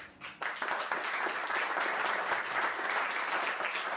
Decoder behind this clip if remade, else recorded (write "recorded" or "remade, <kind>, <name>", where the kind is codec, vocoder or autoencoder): recorded